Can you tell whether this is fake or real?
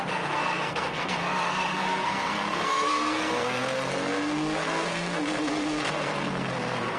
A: fake